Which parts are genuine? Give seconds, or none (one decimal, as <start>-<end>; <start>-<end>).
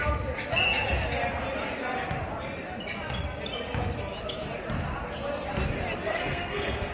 0.0-6.1